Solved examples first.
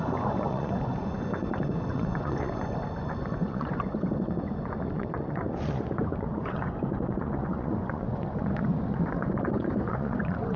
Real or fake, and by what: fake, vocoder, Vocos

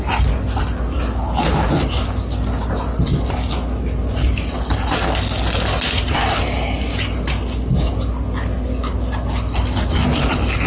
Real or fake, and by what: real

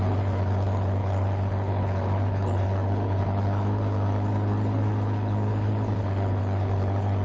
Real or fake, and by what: fake, codec, HILCodec